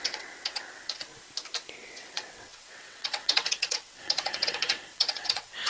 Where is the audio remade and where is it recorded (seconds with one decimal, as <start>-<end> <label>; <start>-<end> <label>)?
0.0-1.1 remade; 1.1-1.7 recorded; 1.7-5.7 remade